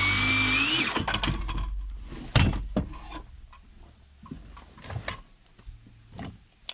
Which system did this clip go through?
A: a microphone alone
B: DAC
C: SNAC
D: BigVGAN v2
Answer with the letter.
A